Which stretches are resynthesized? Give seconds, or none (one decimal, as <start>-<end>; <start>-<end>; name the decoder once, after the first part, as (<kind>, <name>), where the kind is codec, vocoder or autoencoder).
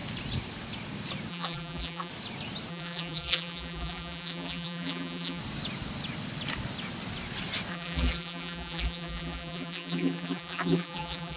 1.3-2.1 (vocoder, BigVGAN v2); 2.7-5.4; 7.7-11.4